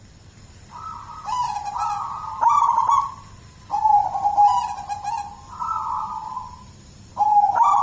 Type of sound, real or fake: real